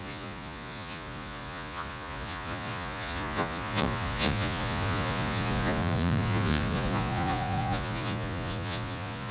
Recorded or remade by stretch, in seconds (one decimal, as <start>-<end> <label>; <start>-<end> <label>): 0.0-9.3 remade